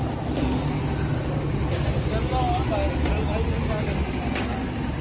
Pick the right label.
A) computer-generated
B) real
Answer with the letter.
B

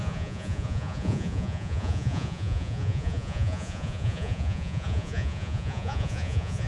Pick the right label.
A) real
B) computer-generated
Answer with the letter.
B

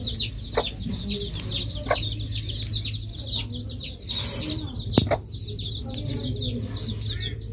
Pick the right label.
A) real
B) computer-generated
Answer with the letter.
A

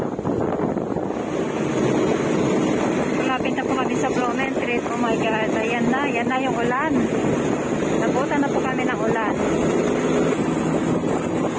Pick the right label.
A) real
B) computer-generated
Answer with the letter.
A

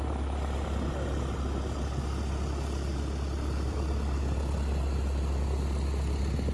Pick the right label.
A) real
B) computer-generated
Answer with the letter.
A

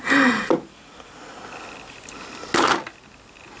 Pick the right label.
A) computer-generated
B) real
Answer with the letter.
B